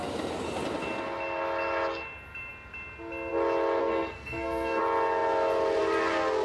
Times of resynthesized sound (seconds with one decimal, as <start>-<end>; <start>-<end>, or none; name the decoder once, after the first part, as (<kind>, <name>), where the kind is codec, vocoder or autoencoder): 3.8-4.8 (codec, SNAC)